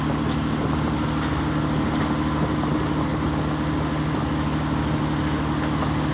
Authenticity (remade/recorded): recorded